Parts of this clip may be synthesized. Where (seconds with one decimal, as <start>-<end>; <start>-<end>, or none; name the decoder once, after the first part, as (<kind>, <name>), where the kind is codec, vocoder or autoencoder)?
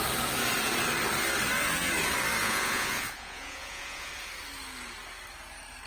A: 2.4-4.1 (vocoder, Vocos)